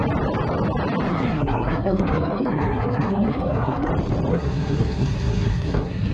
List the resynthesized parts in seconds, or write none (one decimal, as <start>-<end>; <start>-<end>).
1.1-3.9; 4.3-6.1